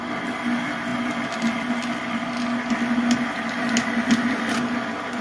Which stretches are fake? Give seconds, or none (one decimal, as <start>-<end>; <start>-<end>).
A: none